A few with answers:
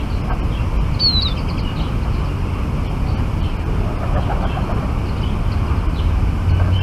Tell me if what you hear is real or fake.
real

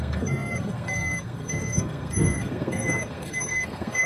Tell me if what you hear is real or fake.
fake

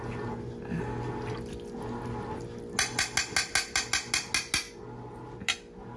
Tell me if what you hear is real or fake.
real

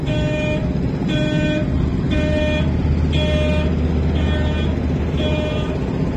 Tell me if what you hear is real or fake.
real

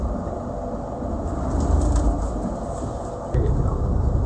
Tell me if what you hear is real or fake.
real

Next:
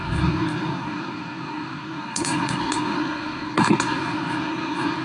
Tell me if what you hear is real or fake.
fake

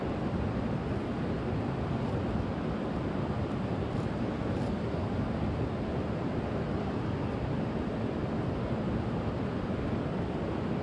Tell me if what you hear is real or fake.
real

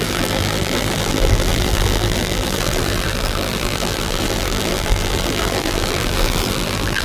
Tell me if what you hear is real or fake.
fake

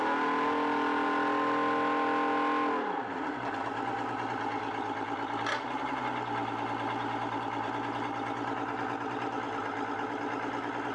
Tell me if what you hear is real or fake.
real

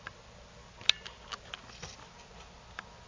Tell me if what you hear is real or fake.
real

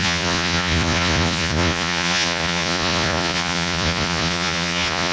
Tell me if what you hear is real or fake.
fake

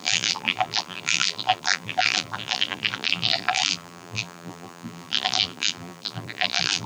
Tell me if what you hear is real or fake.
fake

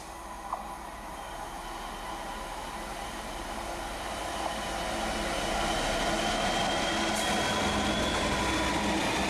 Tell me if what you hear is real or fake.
real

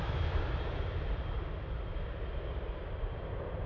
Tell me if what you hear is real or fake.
real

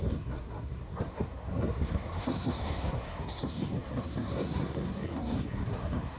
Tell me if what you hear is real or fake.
fake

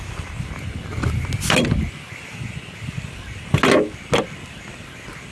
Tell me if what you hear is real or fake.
real